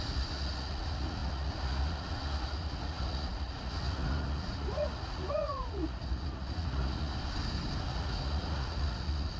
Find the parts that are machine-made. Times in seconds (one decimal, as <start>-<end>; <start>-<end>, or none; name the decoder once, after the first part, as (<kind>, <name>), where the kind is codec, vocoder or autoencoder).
0.0-7.1 (vocoder, Vocos); 7.8-9.4